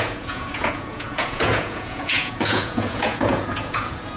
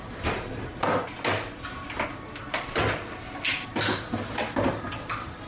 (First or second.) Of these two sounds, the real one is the second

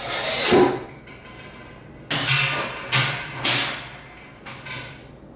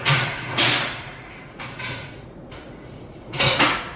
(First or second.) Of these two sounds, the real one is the first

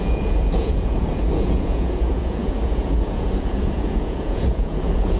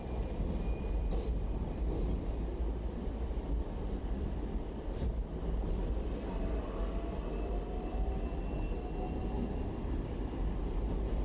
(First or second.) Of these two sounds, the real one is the second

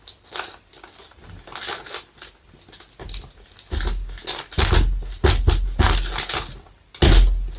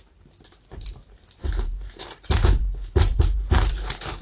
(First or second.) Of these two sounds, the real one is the first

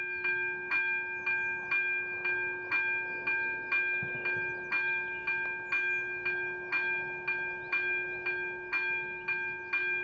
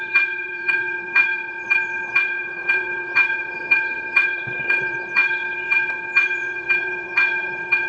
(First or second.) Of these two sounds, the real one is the first